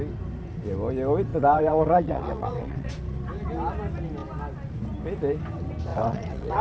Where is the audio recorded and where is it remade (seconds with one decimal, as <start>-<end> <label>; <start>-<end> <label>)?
0.0-1.3 recorded; 1.3-2.9 remade; 2.9-5.9 recorded; 5.9-6.6 remade